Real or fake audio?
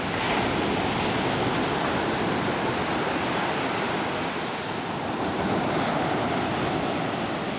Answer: real